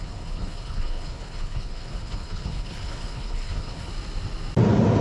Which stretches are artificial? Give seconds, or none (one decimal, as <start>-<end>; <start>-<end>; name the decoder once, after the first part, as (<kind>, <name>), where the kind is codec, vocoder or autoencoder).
0.0-3.9 (codec, HILCodec)